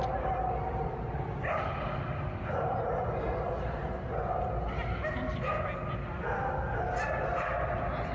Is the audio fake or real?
real